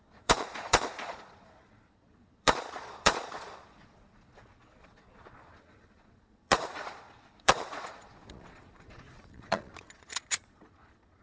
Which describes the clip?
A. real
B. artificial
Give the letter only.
B